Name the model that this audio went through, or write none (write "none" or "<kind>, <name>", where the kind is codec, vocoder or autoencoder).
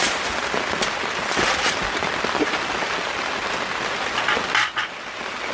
none